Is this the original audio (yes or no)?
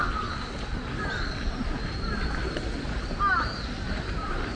yes